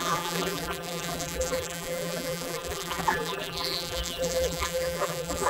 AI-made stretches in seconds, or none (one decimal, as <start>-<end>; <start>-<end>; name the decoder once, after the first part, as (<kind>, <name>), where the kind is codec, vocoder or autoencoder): 0.0-5.5 (vocoder, BigVGAN v2)